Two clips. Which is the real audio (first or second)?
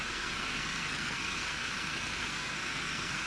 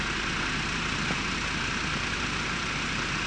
second